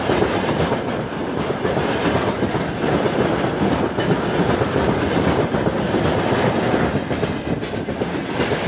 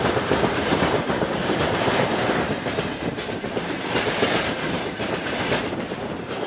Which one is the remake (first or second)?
second